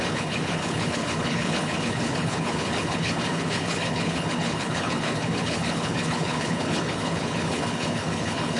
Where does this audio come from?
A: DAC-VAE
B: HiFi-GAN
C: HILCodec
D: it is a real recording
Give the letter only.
C